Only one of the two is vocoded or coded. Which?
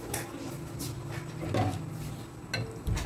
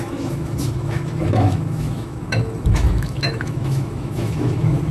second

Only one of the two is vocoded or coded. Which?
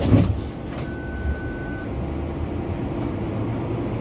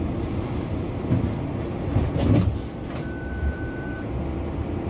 second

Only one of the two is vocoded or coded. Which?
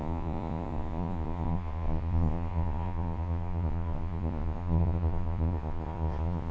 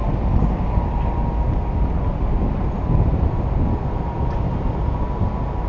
first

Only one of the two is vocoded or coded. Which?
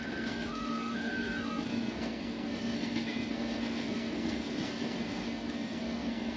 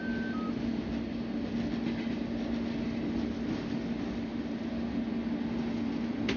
first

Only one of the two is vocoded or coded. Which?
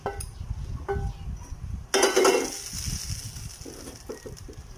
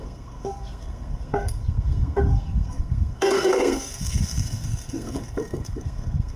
second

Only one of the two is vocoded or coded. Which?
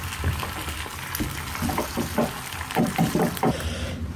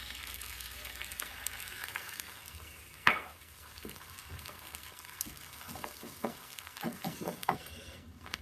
second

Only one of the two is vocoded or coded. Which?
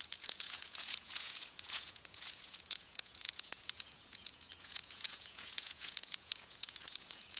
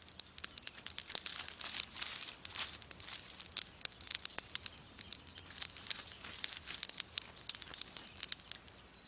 first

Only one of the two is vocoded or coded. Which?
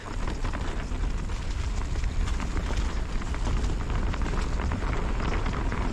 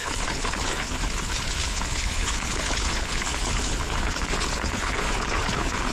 second